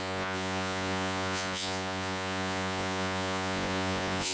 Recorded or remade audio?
remade